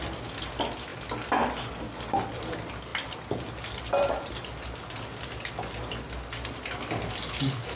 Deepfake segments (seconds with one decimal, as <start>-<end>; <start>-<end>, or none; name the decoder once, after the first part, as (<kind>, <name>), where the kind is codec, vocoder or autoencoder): none